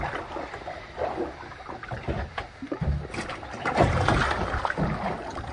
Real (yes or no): yes